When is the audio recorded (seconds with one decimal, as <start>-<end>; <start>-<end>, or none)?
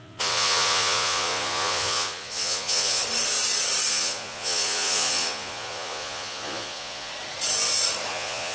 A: 3.0-3.9; 7.1-8.1